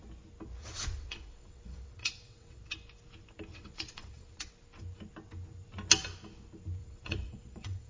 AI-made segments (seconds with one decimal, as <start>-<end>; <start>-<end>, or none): 0.6-2.6; 3.5-4.5; 6.8-7.9

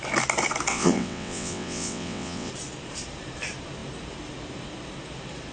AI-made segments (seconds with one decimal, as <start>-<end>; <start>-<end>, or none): 0.7-2.5

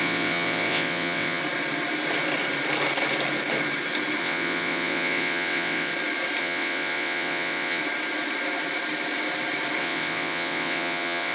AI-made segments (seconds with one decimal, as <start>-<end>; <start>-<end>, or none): 0.0-1.4; 4.2-5.9; 6.4-7.8; 9.8-11.3

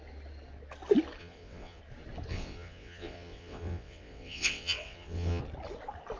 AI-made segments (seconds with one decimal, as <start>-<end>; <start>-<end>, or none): 1.2-1.8; 2.3-5.4